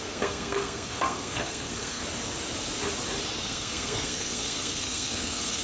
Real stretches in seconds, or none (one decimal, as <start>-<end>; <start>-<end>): 2.0-3.4